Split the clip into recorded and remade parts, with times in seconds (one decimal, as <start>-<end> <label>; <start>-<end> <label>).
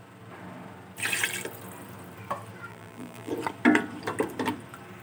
0.0-2.7 recorded; 2.7-3.3 remade; 3.3-5.0 recorded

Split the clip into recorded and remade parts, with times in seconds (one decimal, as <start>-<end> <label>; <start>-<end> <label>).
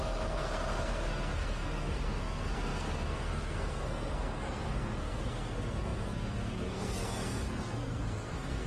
0.0-8.7 remade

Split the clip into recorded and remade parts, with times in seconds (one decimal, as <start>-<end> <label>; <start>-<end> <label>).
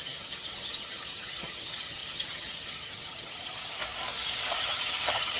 0.0-3.8 remade; 3.8-4.6 recorded; 4.6-5.4 remade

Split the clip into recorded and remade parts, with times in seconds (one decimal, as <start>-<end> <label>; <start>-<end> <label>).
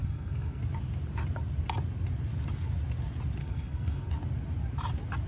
0.0-0.6 remade; 0.6-3.4 recorded; 3.4-4.1 remade; 4.1-5.3 recorded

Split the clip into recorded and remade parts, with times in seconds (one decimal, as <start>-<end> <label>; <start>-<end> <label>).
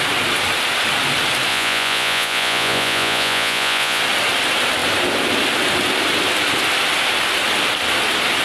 0.0-1.5 recorded; 1.5-4.0 remade; 4.0-8.4 recorded